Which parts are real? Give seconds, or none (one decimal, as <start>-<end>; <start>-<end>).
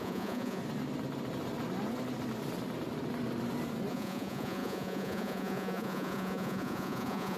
0.6-3.9